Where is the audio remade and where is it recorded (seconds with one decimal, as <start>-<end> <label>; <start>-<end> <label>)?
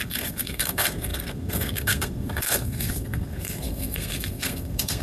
0.0-5.0 remade